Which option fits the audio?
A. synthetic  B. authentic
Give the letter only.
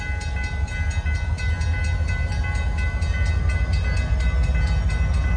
B